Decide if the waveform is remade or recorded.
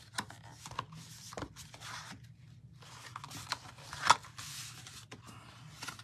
recorded